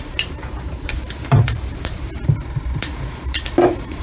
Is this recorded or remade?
remade